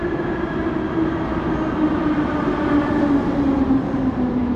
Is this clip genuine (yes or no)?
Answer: yes